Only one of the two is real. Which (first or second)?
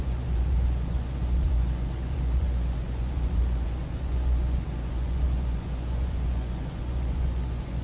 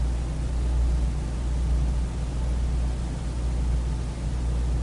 second